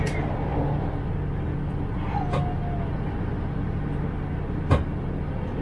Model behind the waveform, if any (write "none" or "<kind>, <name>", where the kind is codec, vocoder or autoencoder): none